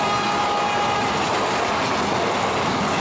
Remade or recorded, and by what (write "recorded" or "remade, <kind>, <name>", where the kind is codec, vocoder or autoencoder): recorded